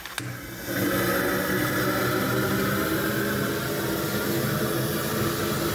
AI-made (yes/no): no